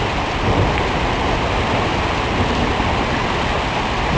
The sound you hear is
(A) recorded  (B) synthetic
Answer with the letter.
A